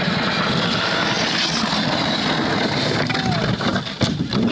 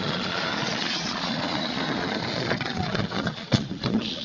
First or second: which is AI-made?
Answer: second